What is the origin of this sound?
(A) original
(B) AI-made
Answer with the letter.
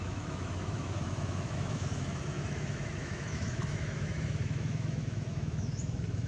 B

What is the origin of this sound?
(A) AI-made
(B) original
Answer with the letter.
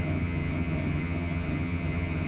A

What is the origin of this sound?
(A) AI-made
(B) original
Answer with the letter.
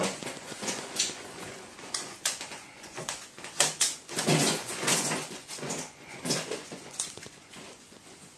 A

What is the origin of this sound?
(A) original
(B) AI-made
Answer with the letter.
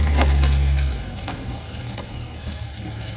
B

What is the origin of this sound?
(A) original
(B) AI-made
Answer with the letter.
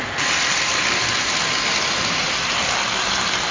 A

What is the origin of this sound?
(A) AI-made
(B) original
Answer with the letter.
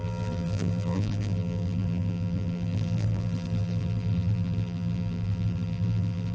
A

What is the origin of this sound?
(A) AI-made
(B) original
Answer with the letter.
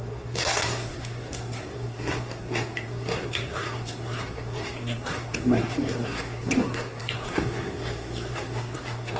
A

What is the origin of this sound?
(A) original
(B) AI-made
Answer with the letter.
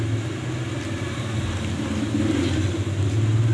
A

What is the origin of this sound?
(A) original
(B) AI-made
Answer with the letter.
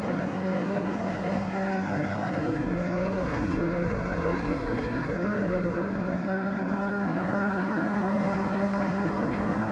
B